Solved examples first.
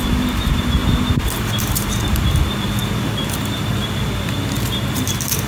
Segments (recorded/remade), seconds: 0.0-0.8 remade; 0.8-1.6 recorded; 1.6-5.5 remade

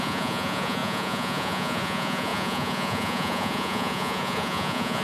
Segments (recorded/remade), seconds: 0.0-5.0 remade

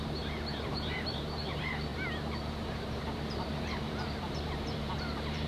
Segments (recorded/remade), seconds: 0.0-5.5 remade

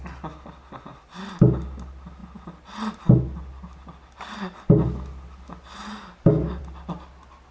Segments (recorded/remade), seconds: 0.0-7.5 recorded

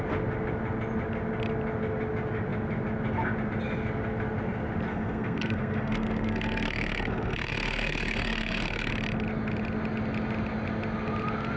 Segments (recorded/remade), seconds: 0.0-4.9 recorded; 4.9-8.9 remade; 8.9-11.6 recorded

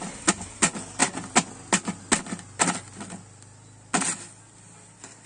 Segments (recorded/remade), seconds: 0.0-5.3 recorded